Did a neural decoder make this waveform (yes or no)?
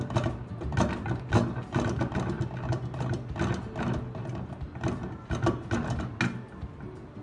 no